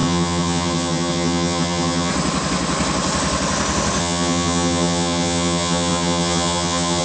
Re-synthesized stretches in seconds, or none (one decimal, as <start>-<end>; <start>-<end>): 0.0-2.1; 4.0-7.0

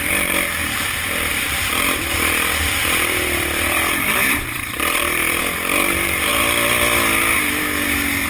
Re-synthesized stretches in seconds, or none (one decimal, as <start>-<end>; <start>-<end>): 0.6-5.4

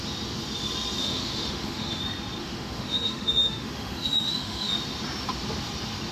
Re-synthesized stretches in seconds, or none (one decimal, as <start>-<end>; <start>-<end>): 1.0-2.0; 2.4-4.7

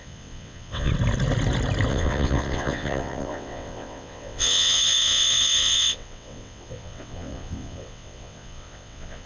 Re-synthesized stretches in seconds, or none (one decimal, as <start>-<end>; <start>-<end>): 0.0-0.9; 1.9-9.3

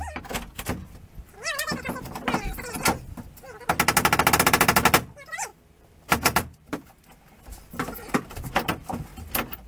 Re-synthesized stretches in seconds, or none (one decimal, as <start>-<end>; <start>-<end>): 0.8-2.7; 5.5-7.2